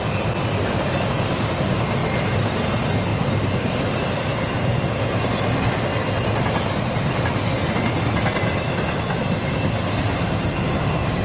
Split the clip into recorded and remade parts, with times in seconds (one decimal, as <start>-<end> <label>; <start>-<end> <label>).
0.0-3.1 recorded; 3.1-5.4 remade; 5.4-11.2 recorded